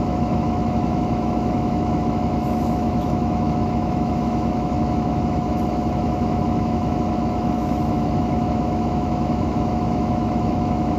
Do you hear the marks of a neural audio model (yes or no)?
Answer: yes